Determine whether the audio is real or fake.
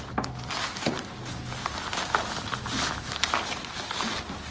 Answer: real